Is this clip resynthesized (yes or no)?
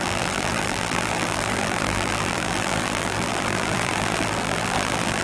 yes